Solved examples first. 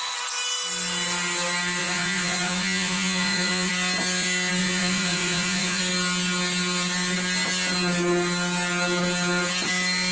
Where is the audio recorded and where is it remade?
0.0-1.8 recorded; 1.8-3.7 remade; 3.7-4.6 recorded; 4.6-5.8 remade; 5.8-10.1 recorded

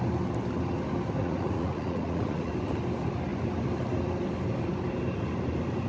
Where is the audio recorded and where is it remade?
0.0-1.2 recorded; 1.2-2.5 remade; 2.5-5.9 recorded

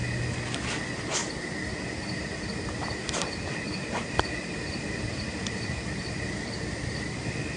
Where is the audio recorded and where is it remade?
0.0-7.6 recorded

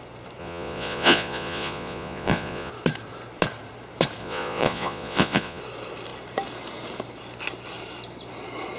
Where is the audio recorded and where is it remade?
0.0-0.4 recorded; 0.4-2.7 remade; 2.7-4.2 recorded; 4.2-5.6 remade; 5.6-8.8 recorded

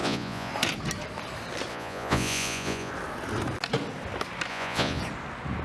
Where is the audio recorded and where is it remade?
0.0-0.5 remade; 0.5-1.7 recorded; 1.7-2.9 remade; 2.9-4.5 recorded; 4.5-5.0 remade; 5.0-5.6 recorded

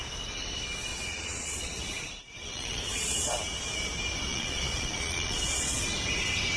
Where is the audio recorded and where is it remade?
0.0-0.9 recorded; 0.9-3.3 remade; 3.3-4.3 recorded; 4.3-5.8 remade; 5.8-6.6 recorded

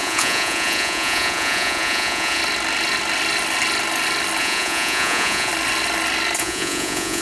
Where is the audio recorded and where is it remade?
0.0-2.4 remade; 2.4-4.4 recorded; 4.4-5.5 remade; 5.5-6.4 recorded; 6.4-7.2 remade